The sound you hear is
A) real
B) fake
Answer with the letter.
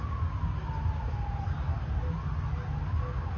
A